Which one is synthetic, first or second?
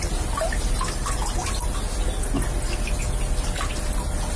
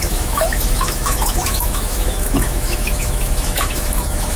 second